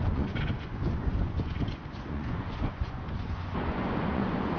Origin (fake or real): fake